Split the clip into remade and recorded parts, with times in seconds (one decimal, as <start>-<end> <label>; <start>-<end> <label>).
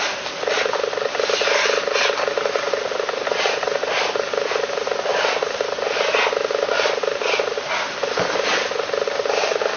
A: 0.0-9.8 recorded